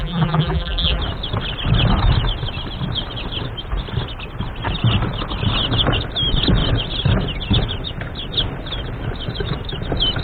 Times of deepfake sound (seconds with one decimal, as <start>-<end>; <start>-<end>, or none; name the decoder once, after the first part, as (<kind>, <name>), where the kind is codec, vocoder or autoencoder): 0.0-1.0 (vocoder, BigVGAN v2)